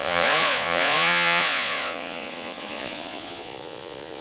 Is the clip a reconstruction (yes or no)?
yes